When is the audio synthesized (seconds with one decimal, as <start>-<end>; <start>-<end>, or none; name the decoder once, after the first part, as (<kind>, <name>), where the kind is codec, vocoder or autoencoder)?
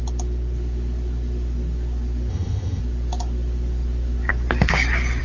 2.3-2.8 (vocoder, HiFi-GAN)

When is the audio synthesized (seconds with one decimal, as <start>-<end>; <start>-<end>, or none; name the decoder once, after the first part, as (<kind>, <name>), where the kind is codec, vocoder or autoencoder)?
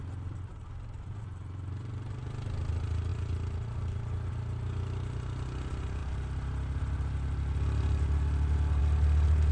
none